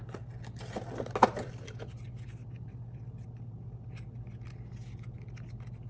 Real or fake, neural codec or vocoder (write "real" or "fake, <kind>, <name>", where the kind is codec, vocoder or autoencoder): real